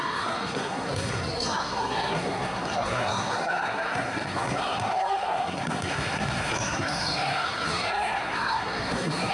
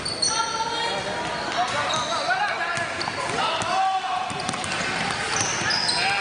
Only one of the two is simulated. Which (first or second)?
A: first